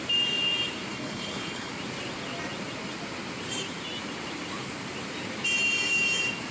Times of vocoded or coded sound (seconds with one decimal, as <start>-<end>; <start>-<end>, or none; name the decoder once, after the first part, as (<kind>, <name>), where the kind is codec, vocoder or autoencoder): 0.9-1.7 (codec, HILCodec)